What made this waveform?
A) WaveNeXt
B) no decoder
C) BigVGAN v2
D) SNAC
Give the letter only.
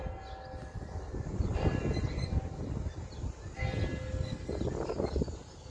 B